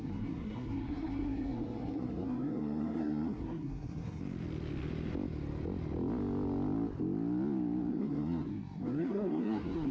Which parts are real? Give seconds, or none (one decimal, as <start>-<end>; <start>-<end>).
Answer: 4.2-7.9